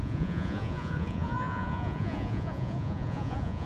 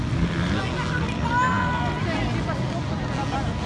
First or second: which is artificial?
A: first